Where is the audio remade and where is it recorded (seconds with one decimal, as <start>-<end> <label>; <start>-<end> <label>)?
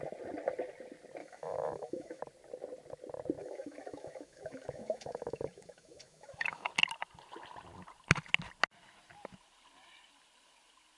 0.0-1.2 recorded; 1.2-2.2 remade; 2.2-3.4 recorded; 3.4-6.7 remade; 6.7-11.0 recorded